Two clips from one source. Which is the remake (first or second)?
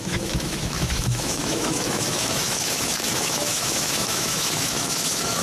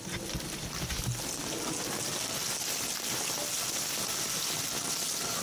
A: first